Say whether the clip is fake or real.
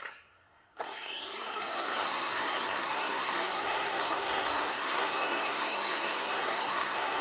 fake